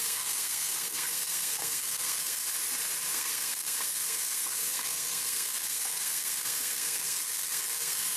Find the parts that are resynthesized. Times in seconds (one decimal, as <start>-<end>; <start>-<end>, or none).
0.0-2.4; 3.1-8.2